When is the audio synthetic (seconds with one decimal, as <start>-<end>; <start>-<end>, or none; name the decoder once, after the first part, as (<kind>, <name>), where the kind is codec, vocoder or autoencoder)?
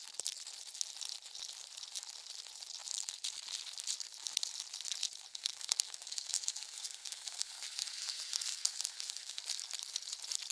5.3-9.4 (codec, SNAC)